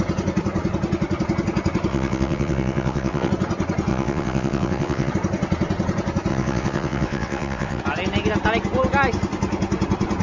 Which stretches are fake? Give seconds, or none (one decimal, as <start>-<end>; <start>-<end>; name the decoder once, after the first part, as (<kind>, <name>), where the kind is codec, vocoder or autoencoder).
1.9-3.3 (vocoder, WaveNeXt); 3.9-5.1; 6.3-7.8